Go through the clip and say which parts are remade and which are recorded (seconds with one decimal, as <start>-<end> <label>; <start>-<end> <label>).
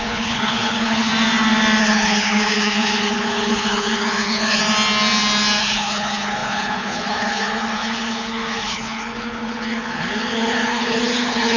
0.0-1.1 remade; 1.1-1.8 recorded; 1.8-4.6 remade; 4.6-5.6 recorded; 5.6-11.6 remade